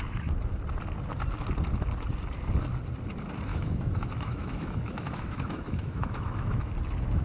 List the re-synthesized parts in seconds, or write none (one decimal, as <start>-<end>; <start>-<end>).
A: 3.5-6.6